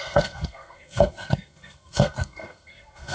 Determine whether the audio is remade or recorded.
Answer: remade